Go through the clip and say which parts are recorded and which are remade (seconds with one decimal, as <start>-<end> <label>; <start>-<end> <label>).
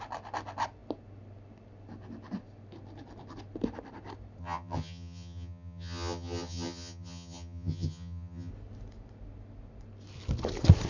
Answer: 0.0-4.4 recorded; 4.4-8.5 remade; 8.5-10.9 recorded